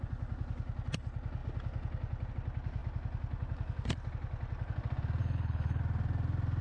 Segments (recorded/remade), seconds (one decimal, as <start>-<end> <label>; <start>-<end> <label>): 0.0-5.2 recorded; 5.2-5.8 remade; 5.8-6.6 recorded